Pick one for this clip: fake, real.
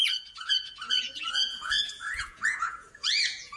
fake